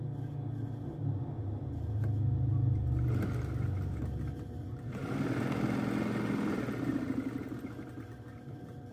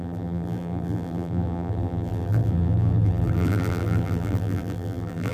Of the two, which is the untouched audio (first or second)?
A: first